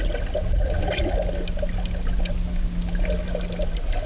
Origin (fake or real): real